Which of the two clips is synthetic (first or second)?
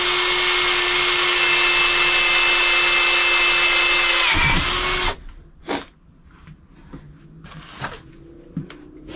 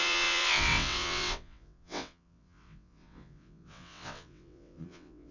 second